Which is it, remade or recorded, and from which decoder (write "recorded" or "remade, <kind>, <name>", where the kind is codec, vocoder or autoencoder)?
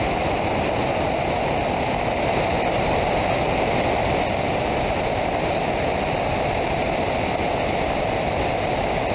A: recorded